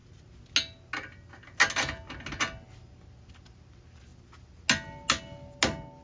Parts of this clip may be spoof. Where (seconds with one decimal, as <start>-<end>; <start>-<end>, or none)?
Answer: none